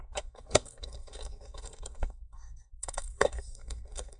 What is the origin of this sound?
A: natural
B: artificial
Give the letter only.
B